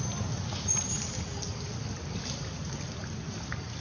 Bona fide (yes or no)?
yes